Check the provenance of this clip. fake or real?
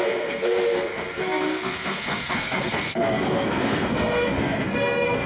fake